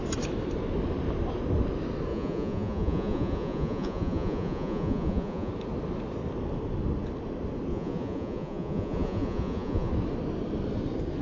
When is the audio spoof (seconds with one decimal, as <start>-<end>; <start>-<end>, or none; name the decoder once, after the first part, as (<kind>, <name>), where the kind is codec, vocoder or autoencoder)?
2.1-5.5 (vocoder, Vocos); 7.7-9.9